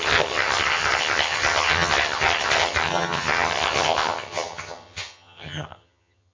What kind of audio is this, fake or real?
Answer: fake